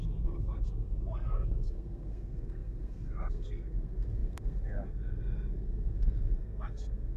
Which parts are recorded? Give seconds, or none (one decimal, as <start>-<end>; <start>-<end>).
none